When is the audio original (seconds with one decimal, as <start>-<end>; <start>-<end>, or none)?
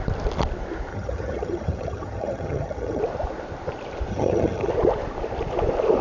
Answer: 0.0-0.9; 3.0-4.1; 4.7-6.0